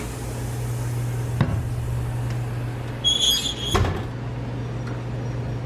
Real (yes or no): yes